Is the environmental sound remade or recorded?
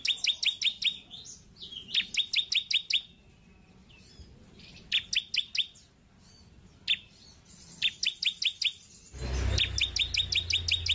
recorded